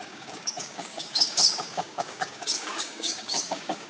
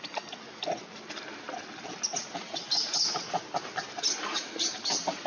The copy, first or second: first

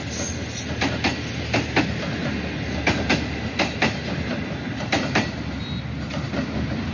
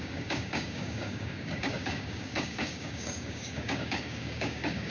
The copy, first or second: second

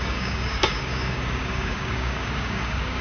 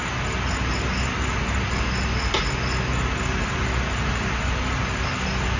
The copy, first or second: first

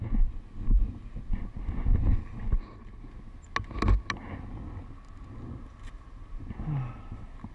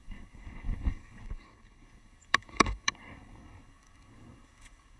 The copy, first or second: second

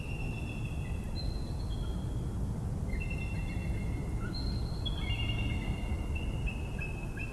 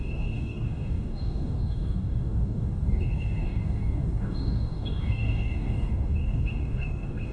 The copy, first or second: second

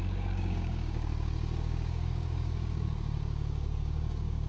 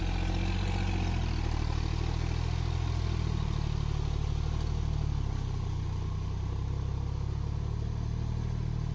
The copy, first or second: first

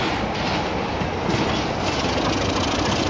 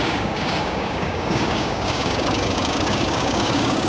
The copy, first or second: second